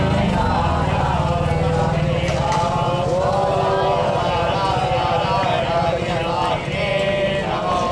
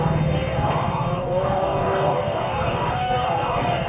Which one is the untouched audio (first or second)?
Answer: first